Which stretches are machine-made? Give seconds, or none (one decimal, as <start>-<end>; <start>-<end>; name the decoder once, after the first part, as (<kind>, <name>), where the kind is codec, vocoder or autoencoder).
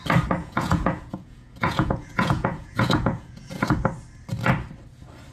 0.4-3.6 (vocoder, Vocos)